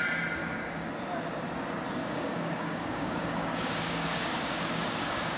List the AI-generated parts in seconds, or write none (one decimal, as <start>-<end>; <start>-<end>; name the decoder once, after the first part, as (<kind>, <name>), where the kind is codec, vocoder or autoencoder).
0.4-0.9 (codec, DAC); 2.0-5.4